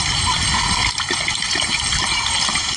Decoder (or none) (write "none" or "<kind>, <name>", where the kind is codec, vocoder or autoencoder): none